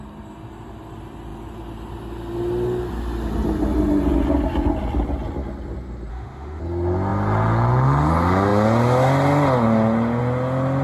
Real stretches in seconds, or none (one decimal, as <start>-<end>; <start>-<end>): 0.0-6.1; 6.6-10.8